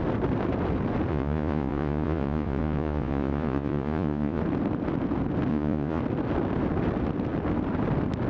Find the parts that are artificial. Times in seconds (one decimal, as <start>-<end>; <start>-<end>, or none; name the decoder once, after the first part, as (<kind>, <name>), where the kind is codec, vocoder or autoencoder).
1.1-4.4 (vocoder, Vocos); 5.5-6.0